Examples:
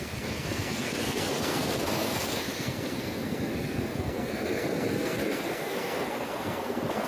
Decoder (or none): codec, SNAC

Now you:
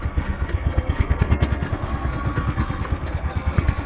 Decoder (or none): codec, SNAC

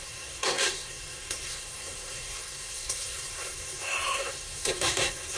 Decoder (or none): codec, SNAC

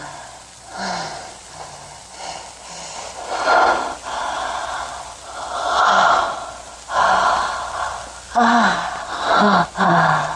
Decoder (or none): none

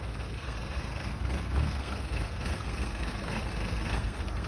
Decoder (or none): codec, SNAC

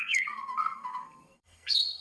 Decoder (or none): codec, SNAC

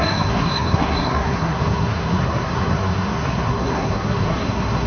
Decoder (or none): codec, SNAC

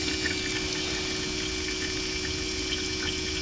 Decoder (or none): none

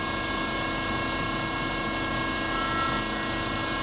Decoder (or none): none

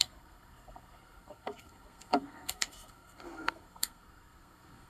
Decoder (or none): codec, SNAC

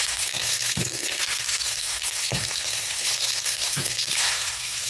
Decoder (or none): codec, SNAC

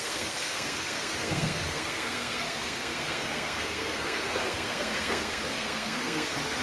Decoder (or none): codec, SNAC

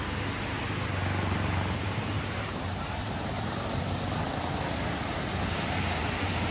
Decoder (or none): none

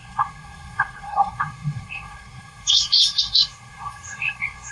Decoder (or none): codec, SNAC